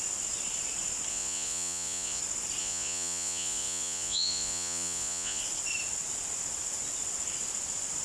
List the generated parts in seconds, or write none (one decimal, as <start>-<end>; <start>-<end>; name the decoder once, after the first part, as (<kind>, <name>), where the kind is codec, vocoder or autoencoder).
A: 1.1-2.2 (vocoder, Vocos); 2.6-5.4